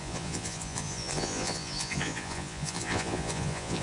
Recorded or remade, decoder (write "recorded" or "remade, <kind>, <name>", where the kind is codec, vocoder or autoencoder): remade, vocoder, Vocos